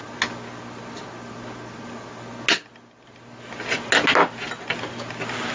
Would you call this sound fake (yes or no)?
no